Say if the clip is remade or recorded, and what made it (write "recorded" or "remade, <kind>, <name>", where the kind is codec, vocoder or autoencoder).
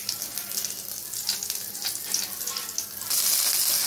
recorded